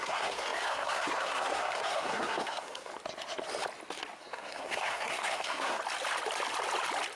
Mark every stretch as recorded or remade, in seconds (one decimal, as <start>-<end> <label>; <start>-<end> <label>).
0.0-2.9 remade; 2.9-4.2 recorded; 4.2-5.8 remade; 5.8-7.2 recorded